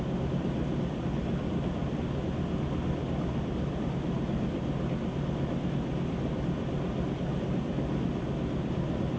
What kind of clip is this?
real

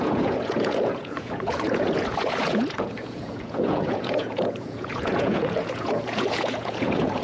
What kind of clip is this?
fake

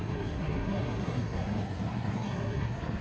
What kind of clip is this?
fake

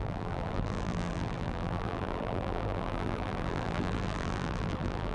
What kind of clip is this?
fake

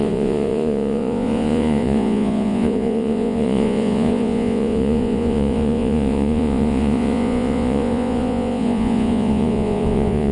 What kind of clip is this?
fake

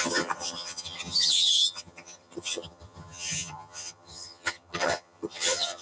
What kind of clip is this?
fake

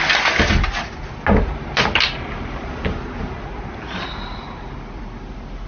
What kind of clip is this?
real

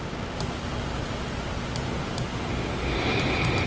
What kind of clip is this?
real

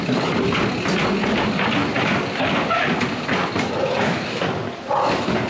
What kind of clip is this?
real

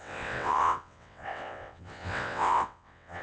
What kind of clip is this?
fake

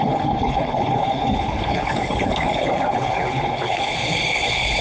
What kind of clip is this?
fake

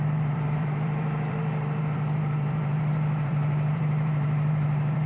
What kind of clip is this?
fake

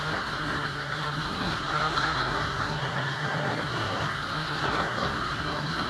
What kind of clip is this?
fake